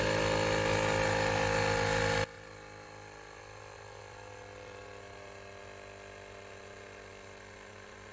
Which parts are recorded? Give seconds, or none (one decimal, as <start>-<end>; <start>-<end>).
0.0-8.1